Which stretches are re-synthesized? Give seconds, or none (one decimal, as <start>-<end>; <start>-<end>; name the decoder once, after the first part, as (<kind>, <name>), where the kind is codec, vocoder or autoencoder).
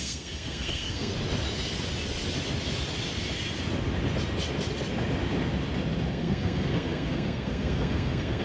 0.0-1.1 (codec, SNAC); 6.1-8.4